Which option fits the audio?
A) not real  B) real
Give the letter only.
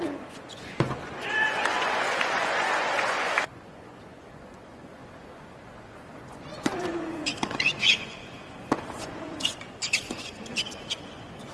A